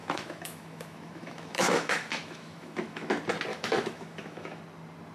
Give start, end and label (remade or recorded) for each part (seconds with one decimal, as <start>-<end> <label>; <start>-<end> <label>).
0.0-3.1 remade; 3.1-3.5 recorded; 3.5-4.6 remade; 4.6-5.1 recorded